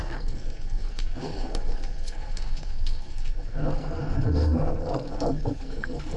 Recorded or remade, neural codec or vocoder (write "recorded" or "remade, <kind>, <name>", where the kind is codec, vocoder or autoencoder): remade, codec, SNAC